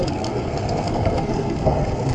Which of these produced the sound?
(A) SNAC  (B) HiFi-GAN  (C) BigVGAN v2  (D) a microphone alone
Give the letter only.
A